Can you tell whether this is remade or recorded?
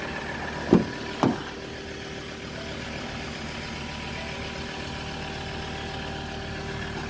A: recorded